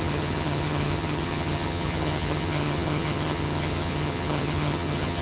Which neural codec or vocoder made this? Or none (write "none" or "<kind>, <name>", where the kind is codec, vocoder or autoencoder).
vocoder, HiFi-GAN